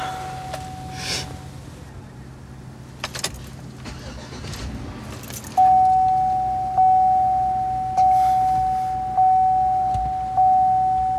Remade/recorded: recorded